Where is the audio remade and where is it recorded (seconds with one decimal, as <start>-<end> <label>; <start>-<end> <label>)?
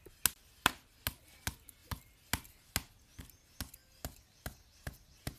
0.0-5.4 recorded